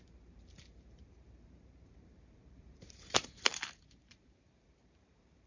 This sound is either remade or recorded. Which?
remade